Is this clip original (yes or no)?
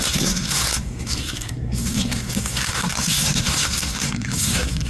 no